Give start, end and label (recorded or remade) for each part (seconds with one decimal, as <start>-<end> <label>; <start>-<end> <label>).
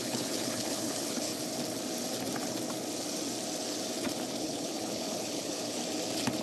0.0-1.3 remade; 1.3-4.4 recorded; 4.4-5.8 remade; 5.8-6.4 recorded